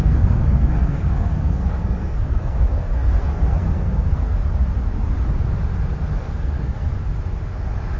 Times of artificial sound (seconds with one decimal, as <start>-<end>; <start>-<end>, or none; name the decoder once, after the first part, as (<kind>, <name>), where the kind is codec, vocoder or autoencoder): 0.0-4.4 (codec, SNAC); 6.2-6.9